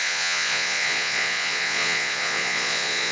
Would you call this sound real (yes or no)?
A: no